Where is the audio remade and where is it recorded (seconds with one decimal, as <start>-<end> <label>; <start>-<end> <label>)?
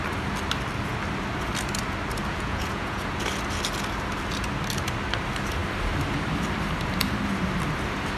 0.0-2.3 recorded; 2.3-3.2 remade; 3.2-8.2 recorded